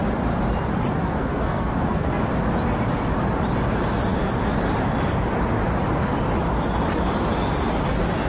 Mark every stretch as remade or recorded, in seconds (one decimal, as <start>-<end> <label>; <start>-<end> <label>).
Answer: 0.0-1.0 recorded; 1.0-2.2 remade; 2.2-8.3 recorded

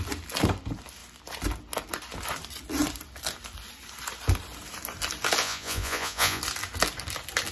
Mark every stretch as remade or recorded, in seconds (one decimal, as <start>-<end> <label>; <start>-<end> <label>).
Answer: 0.0-5.4 recorded; 5.4-6.4 remade; 6.4-7.5 recorded

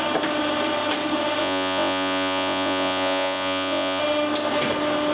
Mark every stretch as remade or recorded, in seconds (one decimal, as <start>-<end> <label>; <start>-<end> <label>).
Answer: 0.0-1.4 recorded; 1.4-4.0 remade; 4.0-5.1 recorded

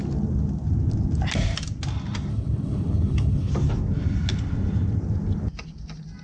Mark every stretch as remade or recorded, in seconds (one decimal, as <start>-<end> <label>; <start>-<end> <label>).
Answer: 0.0-2.3 recorded; 2.3-3.5 remade; 3.5-6.2 recorded

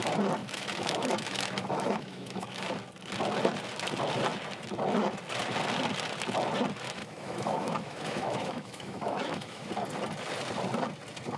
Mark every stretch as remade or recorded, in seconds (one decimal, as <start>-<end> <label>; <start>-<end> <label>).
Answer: 0.0-0.4 recorded; 0.4-2.6 remade; 2.6-7.0 recorded; 7.0-9.7 remade; 9.7-11.4 recorded

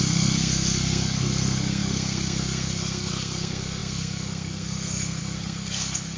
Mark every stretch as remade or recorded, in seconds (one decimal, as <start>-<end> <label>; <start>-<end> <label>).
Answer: 0.0-6.2 remade